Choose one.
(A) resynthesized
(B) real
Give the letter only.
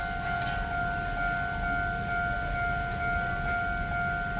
B